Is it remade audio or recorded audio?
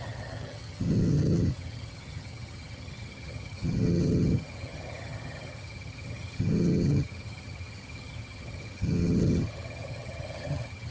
remade